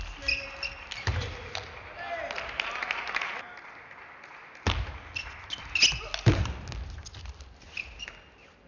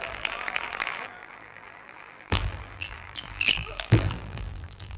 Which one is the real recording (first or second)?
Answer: first